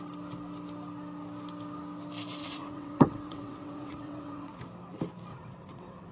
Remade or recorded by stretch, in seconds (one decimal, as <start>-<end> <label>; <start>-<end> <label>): 0.0-2.4 recorded; 2.4-4.6 remade; 4.6-5.3 recorded; 5.3-6.1 remade